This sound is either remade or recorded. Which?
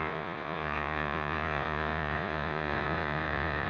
remade